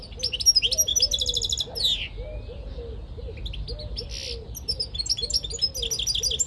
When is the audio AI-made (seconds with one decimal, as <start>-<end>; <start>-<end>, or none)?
none

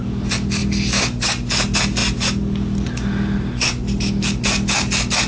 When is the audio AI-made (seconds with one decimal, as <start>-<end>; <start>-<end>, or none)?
none

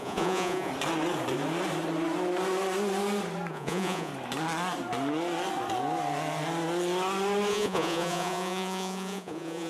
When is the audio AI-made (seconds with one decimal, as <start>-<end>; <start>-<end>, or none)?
0.0-0.7; 3.5-4.1; 7.5-9.7

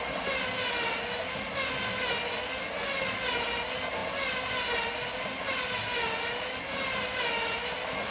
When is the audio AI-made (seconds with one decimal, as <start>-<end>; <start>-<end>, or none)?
none

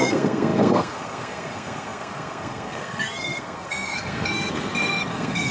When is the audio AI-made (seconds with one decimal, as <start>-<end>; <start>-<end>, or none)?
0.0-5.5